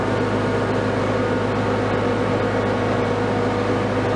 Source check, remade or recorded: recorded